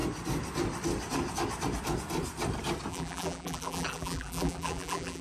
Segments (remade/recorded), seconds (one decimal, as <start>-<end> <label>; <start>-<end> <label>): 0.0-2.9 recorded; 2.9-5.2 remade